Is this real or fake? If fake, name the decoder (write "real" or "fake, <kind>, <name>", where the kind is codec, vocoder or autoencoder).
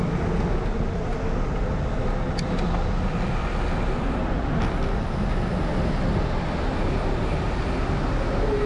real